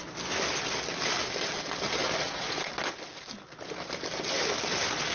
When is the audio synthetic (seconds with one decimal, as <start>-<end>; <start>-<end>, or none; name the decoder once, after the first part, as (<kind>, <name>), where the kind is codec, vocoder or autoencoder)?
2.0-2.6 (vocoder, Vocos)